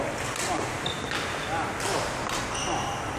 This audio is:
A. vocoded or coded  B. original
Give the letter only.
B